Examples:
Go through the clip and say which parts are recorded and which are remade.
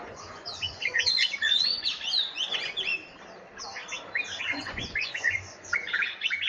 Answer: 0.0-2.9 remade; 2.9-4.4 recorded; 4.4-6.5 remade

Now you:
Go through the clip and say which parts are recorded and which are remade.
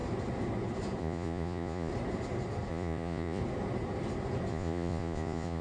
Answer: 0.0-1.0 recorded; 1.0-1.9 remade; 1.9-2.7 recorded; 2.7-3.4 remade; 3.4-4.5 recorded; 4.5-5.6 remade